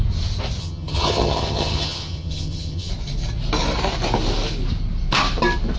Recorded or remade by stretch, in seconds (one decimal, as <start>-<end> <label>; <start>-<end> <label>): 0.0-0.6 recorded; 0.6-2.9 remade; 2.9-5.8 recorded